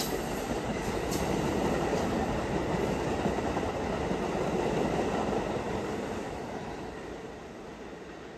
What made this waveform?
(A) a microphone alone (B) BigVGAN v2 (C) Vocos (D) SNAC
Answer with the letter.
A